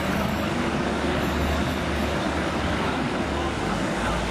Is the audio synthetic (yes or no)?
yes